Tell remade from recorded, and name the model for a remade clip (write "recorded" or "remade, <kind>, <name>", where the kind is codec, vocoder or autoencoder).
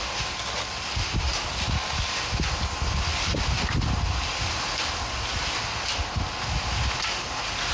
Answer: recorded